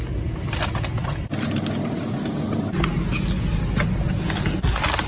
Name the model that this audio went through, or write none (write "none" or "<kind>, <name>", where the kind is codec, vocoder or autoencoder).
none